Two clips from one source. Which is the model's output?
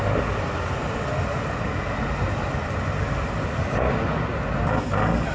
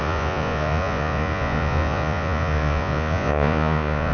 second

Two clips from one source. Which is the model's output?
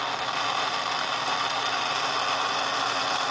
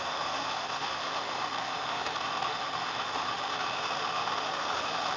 second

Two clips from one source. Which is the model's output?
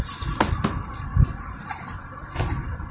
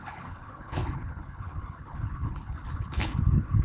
second